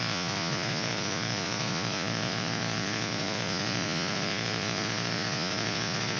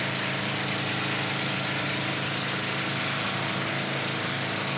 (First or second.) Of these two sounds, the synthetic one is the first